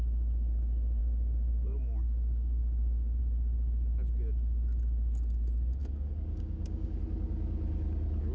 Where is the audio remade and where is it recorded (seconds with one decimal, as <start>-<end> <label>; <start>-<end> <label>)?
0.0-1.0 recorded; 1.0-3.2 remade; 3.2-5.8 recorded; 5.8-7.0 remade; 7.0-8.3 recorded